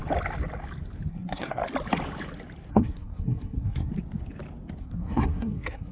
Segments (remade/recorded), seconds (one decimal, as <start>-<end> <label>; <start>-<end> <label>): 0.0-1.1 recorded; 1.1-1.6 remade; 1.6-2.7 recorded; 2.7-3.9 remade; 3.9-4.8 recorded; 4.8-5.9 remade